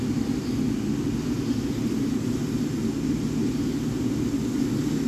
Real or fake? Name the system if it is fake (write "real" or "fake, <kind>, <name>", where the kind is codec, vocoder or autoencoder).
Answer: real